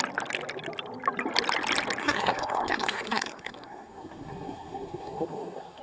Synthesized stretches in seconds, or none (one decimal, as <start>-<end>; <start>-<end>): 2.0-5.8